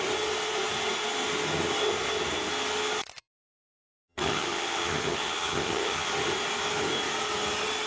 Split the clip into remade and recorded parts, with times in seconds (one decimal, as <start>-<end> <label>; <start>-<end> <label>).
0.0-4.1 recorded; 4.1-6.1 remade; 6.1-7.9 recorded